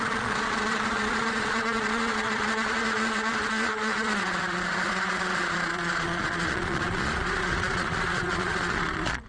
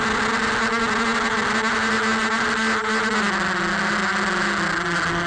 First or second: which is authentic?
second